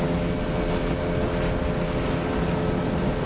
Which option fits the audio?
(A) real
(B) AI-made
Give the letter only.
A